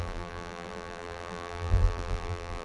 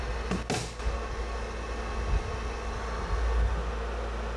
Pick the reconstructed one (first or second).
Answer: first